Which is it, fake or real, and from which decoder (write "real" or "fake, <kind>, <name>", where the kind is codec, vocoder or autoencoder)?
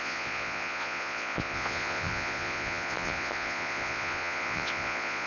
fake, vocoder, Vocos